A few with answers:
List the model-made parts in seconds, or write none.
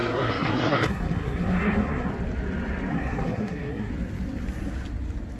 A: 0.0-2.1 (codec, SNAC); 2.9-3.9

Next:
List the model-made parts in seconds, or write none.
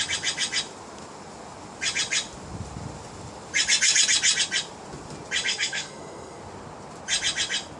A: 5.5-6.4 (codec, SNAC)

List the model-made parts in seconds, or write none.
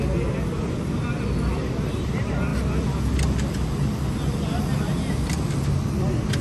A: none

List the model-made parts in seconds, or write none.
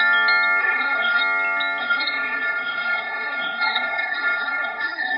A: 0.6-1.2 (codec, SNAC); 1.8-5.2